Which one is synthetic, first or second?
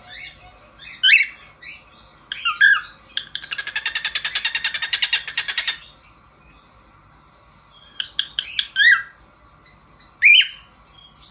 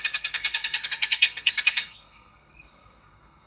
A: second